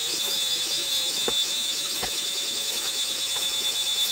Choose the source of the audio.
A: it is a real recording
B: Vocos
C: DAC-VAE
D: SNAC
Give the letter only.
C